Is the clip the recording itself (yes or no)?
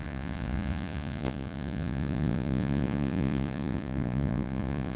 no